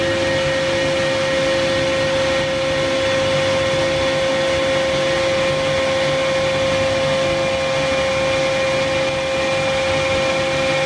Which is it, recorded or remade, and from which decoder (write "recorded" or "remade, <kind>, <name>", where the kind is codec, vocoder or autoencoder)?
recorded